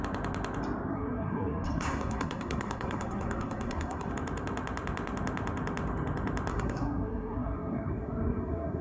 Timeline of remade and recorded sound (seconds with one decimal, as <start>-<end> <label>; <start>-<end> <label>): 0.0-0.9 recorded; 0.9-4.1 remade; 4.1-6.5 recorded; 6.5-8.8 remade